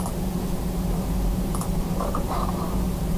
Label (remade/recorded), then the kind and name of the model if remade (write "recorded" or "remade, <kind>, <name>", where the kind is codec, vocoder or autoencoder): remade, vocoder, BigVGAN v2